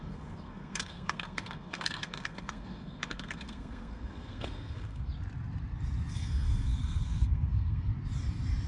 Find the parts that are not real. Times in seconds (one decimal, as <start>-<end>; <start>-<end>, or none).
0.0-5.1; 6.1-7.9